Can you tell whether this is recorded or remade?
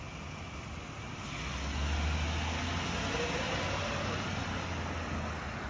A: recorded